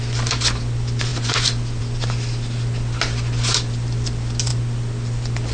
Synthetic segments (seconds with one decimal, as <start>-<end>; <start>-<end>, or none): none